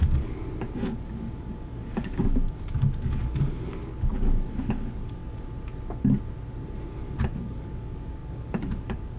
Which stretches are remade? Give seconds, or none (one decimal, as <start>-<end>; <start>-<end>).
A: 0.0-5.2; 7.4-9.2